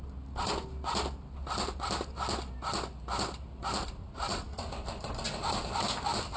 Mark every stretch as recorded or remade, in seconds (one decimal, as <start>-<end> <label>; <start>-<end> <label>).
0.0-4.0 recorded; 4.0-4.7 remade; 4.7-6.4 recorded